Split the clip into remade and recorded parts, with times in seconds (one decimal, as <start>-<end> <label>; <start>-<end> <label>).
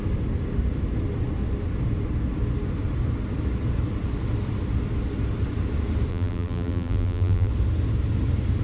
0.0-6.1 recorded; 6.1-7.5 remade; 7.5-8.6 recorded